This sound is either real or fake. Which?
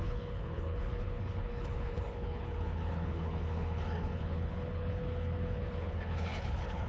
fake